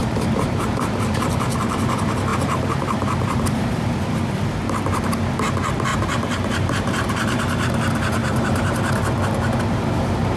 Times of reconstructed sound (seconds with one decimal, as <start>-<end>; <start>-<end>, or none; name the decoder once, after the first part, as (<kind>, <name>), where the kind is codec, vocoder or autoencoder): 0.0-1.3 (vocoder, BigVGAN v2); 2.3-4.0; 5.9-7.4; 8.2-8.9